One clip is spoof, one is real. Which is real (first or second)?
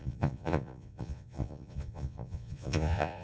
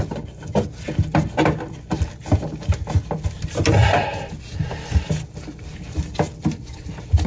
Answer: second